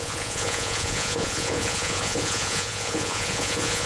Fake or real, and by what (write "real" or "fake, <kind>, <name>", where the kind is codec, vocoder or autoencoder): fake, vocoder, Vocos